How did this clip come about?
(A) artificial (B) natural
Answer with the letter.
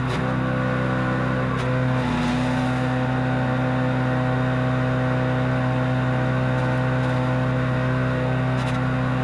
B